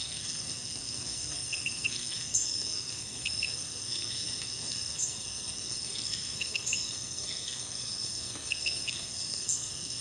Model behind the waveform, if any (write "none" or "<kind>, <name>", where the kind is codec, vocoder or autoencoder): codec, SNAC